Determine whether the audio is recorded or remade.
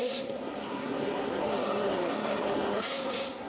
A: remade